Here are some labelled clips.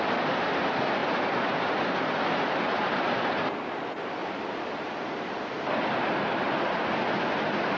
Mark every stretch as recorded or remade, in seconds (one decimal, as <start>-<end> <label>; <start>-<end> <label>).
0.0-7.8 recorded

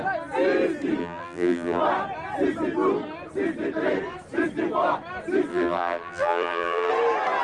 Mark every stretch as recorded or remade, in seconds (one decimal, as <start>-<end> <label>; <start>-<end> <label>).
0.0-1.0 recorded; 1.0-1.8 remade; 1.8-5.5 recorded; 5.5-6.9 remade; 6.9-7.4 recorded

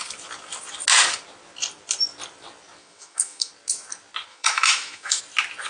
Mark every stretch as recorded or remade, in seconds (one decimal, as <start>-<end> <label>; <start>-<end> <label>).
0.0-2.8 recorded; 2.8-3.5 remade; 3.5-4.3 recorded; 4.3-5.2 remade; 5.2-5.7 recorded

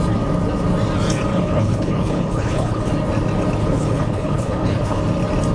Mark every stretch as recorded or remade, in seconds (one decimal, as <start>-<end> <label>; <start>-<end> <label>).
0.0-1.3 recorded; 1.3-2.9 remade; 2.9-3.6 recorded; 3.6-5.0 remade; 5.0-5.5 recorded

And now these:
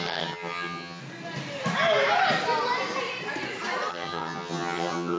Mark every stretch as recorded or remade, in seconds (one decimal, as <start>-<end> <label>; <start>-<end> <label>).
0.0-1.0 remade; 1.0-3.9 recorded; 3.9-5.2 remade

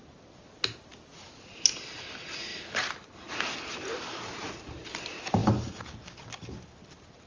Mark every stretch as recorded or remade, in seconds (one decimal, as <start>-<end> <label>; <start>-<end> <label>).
0.0-7.3 recorded